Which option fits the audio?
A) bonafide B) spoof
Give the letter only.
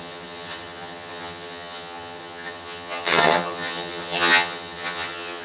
B